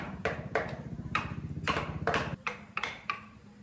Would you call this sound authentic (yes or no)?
no